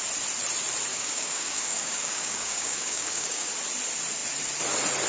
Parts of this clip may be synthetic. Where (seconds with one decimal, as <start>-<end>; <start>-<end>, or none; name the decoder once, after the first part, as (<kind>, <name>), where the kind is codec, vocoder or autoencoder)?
0.9-3.5 (codec, DAC)